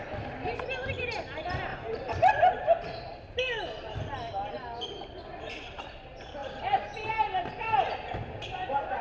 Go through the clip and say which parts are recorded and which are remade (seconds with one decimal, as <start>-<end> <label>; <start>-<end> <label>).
0.0-1.7 recorded; 1.7-2.3 remade; 2.3-6.4 recorded; 6.4-7.1 remade; 7.1-9.0 recorded